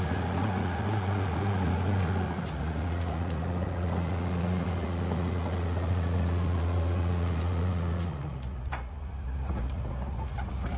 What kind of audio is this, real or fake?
fake